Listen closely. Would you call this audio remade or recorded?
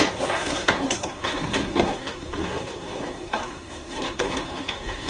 remade